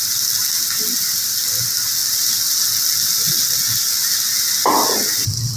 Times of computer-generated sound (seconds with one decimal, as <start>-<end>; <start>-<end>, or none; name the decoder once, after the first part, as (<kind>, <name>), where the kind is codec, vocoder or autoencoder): none